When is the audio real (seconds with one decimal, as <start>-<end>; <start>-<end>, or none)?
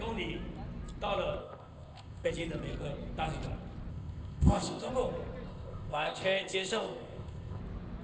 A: 0.0-1.4; 2.3-3.9; 4.9-5.5; 7.6-8.0